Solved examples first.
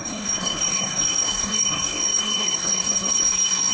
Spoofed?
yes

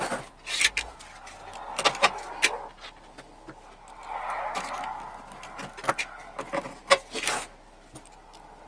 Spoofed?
no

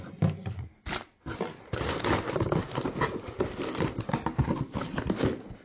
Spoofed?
no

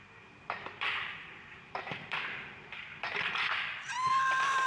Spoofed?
yes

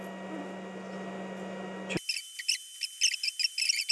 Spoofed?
no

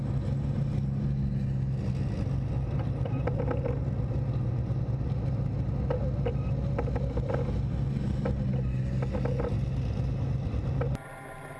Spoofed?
no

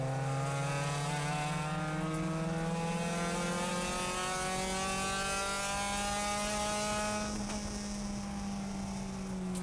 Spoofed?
no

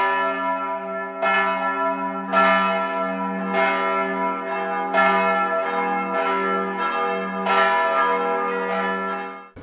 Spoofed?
no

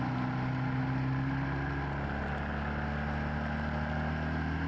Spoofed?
no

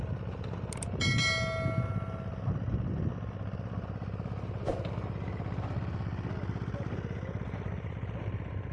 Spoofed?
no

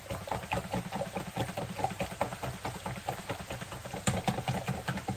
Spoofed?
no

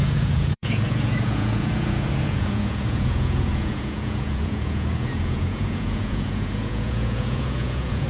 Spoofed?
yes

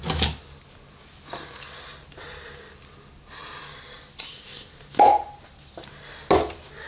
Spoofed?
no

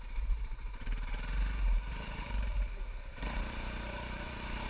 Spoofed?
yes